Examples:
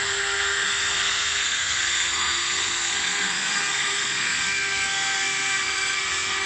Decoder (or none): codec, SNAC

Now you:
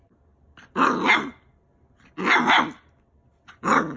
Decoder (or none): none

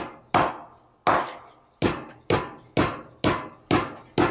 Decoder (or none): none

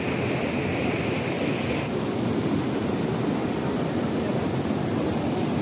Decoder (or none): none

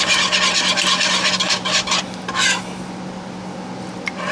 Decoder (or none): none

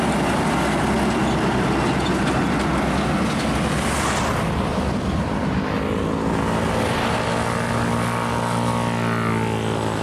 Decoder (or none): none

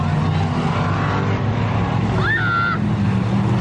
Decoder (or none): none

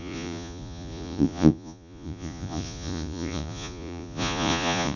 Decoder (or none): vocoder, Vocos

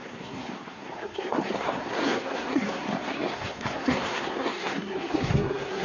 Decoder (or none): codec, SNAC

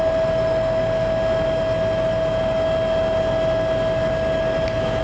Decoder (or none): none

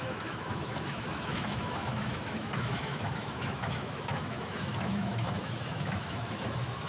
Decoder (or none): autoencoder, DAC-VAE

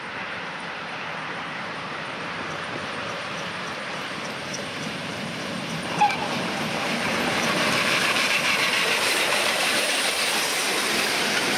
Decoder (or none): vocoder, BigVGAN v2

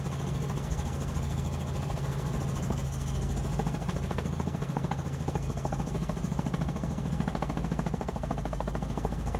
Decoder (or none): codec, SNAC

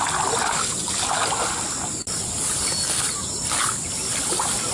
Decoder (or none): none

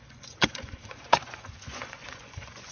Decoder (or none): vocoder, Vocos